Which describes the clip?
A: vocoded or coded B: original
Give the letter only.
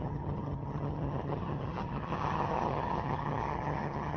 A